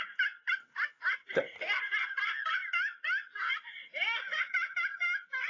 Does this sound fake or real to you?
real